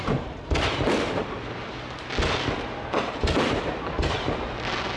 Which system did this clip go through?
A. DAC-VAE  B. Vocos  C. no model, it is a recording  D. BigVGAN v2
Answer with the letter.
C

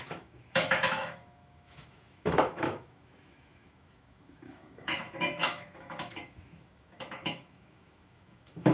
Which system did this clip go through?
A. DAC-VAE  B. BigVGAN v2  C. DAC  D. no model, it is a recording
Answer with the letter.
A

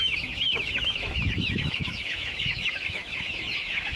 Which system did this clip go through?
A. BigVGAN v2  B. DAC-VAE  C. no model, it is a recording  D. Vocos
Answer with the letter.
B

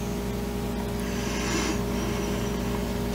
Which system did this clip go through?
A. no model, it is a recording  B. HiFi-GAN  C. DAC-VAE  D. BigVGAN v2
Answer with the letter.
A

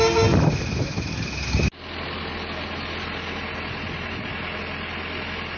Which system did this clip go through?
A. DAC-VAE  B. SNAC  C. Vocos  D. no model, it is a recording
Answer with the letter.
D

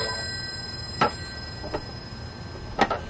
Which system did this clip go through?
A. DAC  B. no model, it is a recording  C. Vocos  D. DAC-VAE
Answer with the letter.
B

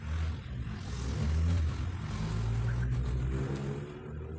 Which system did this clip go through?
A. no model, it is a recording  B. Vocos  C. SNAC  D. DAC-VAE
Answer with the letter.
A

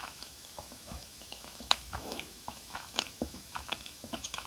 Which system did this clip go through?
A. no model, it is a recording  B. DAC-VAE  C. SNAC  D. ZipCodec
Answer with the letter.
B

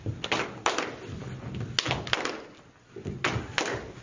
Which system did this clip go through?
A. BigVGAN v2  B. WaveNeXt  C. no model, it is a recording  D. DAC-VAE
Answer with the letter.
C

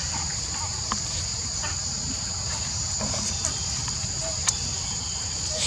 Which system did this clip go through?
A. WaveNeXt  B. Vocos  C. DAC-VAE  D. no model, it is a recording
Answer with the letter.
D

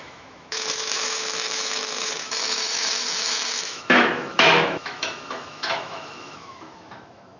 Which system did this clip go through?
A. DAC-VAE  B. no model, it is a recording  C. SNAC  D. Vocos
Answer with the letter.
A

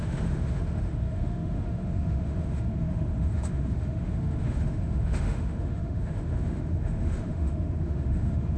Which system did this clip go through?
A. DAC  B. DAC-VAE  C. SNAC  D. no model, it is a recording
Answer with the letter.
B